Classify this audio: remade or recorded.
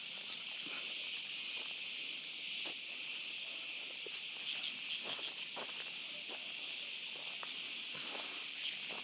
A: recorded